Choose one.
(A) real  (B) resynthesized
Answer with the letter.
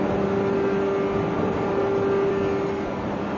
A